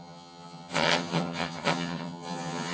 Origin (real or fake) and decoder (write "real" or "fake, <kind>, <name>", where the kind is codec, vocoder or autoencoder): fake, vocoder, HiFi-GAN